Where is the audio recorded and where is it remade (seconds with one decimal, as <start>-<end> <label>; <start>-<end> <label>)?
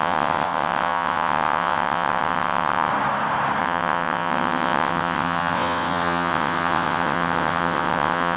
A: 0.0-2.9 remade; 2.9-3.6 recorded; 3.6-8.4 remade